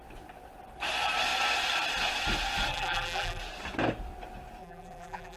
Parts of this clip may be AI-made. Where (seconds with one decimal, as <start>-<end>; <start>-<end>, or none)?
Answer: 2.7-3.4; 4.6-5.4